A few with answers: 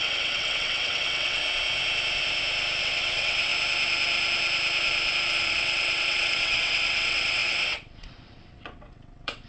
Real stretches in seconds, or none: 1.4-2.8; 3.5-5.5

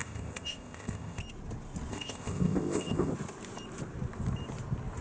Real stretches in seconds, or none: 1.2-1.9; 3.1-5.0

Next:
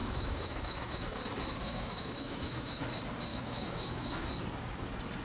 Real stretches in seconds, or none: 1.2-1.6; 2.8-3.3; 4.3-5.2

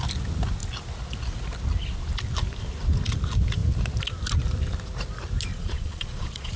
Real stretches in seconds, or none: 0.0-5.5